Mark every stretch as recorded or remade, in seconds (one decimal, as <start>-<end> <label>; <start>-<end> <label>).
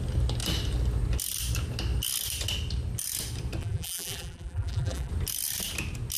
0.0-3.6 recorded; 3.6-5.1 remade; 5.1-6.2 recorded